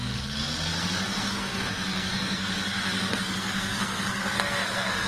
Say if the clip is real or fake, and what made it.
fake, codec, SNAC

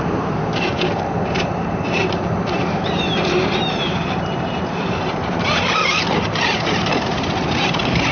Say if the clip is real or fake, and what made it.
fake, vocoder, BigVGAN v2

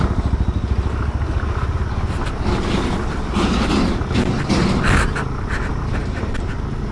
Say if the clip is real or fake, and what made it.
real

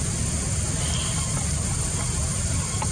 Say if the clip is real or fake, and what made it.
real